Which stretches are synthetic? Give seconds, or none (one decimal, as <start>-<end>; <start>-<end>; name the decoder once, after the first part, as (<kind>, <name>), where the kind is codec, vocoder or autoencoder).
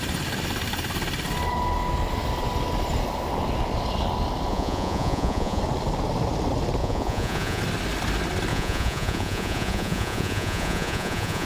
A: 4.5-5.6 (vocoder, Vocos); 6.8-7.6; 8.5-11.5